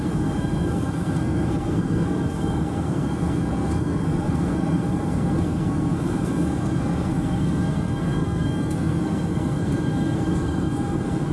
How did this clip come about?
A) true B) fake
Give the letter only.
B